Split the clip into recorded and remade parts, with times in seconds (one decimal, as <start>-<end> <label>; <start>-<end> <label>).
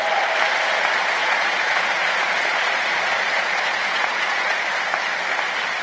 0.0-1.2 recorded; 1.2-4.6 remade; 4.6-5.8 recorded